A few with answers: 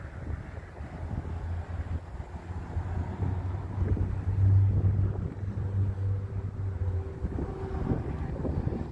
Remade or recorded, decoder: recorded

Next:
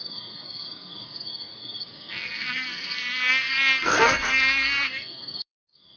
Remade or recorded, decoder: remade, codec, SNAC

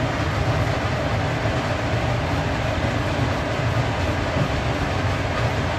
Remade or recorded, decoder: recorded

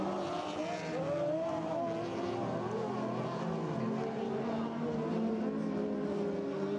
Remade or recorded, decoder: recorded